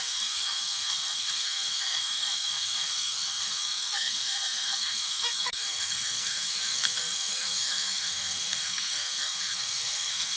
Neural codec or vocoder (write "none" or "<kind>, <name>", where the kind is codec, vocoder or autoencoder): codec, SNAC